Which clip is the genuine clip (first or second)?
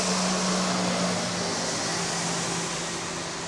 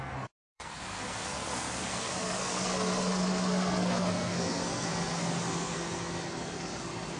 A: first